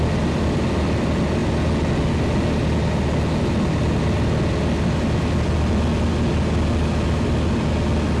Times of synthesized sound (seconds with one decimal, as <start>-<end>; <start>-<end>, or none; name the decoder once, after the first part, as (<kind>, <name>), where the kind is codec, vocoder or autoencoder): none